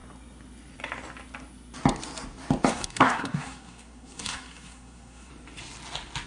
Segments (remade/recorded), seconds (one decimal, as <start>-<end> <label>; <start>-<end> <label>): 0.0-2.7 recorded; 2.7-5.3 remade; 5.3-6.3 recorded